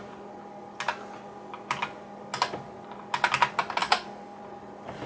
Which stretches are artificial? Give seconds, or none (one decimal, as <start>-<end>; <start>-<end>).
3.8-4.4